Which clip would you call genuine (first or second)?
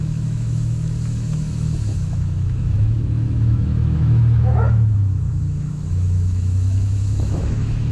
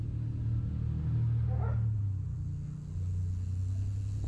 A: second